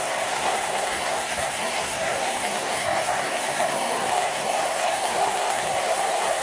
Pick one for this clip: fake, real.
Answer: fake